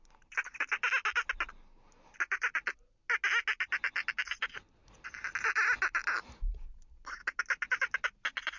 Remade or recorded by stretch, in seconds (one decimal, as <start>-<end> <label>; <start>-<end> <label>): 0.0-8.6 recorded